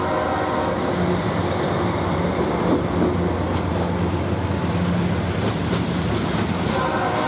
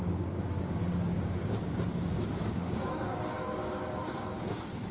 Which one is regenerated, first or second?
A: second